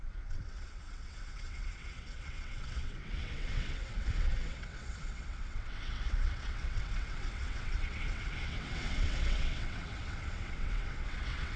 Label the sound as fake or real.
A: fake